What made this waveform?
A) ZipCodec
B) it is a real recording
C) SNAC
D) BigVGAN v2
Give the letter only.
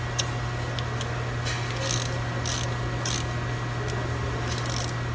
B